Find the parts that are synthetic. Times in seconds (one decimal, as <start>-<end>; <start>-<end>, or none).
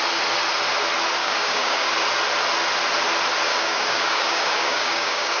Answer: 1.2-1.9; 3.5-5.4